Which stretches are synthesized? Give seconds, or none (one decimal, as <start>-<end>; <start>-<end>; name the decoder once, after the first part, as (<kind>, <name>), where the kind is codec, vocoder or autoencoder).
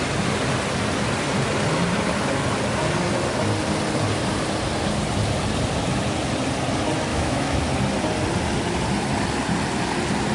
7.1-7.6 (autoencoder, DAC-VAE)